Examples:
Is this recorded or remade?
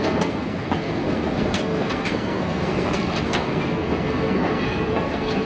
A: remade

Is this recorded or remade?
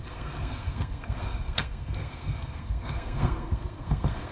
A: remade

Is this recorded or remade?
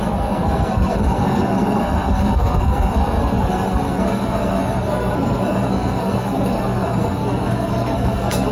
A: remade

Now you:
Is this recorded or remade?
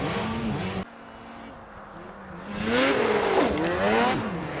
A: recorded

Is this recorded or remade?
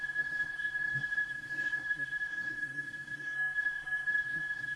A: remade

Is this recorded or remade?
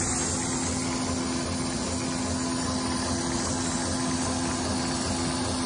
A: recorded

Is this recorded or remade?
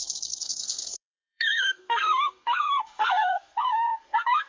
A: remade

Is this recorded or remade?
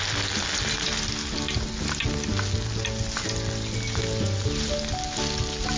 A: recorded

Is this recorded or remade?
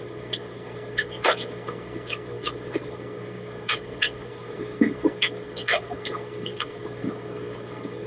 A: remade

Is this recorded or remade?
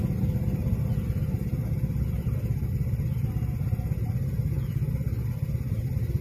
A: recorded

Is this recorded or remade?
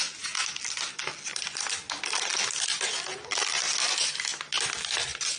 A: recorded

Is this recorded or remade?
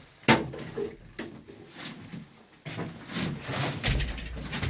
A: recorded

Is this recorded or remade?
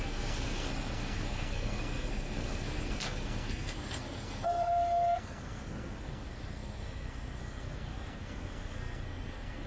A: remade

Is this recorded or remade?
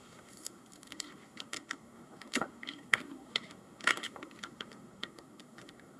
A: remade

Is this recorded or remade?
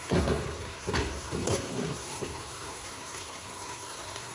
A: remade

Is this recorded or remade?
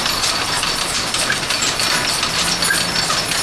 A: recorded